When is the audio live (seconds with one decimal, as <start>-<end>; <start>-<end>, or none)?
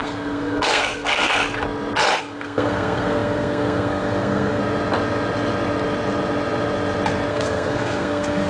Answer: 1.4-2.2; 4.6-7.3